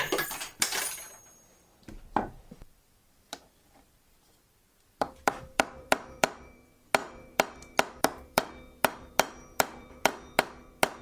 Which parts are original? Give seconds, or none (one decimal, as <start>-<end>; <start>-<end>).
none